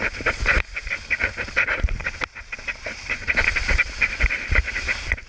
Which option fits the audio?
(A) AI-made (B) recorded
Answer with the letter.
A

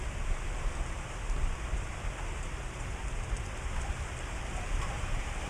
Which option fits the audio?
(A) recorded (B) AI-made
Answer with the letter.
B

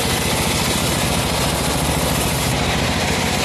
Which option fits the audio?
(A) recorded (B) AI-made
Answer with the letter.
A